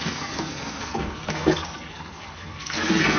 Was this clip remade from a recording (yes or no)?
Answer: yes